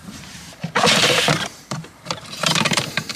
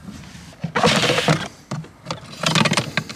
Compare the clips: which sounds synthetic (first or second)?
first